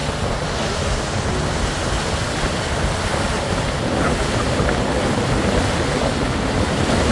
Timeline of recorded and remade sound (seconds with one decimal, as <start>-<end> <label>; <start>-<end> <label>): 0.0-7.1 recorded